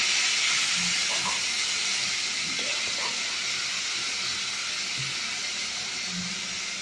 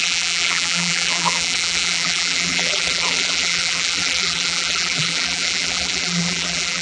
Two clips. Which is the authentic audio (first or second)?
first